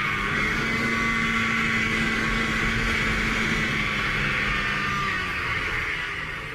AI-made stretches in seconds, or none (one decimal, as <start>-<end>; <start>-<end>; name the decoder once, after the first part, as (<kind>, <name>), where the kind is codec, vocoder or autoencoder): 0.0-0.9 (codec, DAC); 1.8-2.4; 4.9-6.5